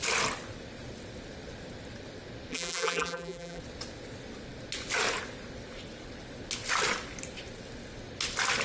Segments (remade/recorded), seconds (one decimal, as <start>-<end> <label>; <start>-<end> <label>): 0.0-2.5 recorded; 2.5-3.6 remade; 3.6-8.6 recorded